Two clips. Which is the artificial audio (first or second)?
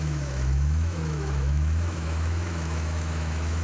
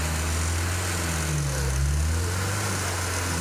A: first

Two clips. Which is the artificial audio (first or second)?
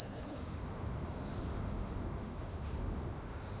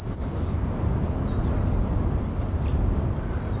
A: first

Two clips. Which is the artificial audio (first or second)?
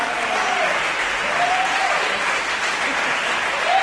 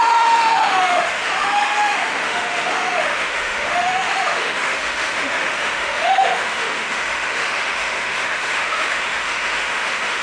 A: second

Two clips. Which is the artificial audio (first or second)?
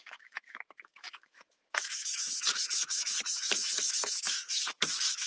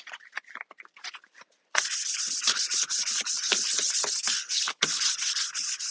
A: first